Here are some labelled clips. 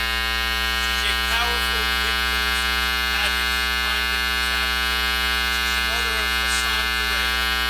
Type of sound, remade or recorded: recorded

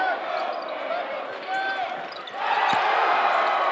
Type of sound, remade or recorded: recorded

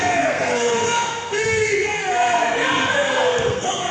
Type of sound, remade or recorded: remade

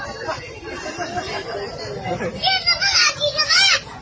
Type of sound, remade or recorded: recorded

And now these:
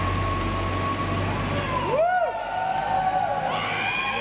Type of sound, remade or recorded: recorded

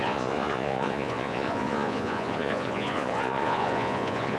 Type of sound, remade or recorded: remade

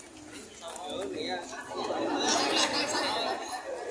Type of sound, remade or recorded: recorded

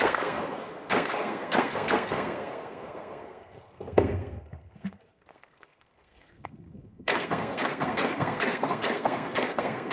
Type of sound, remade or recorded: remade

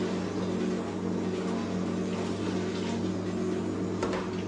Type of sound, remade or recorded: recorded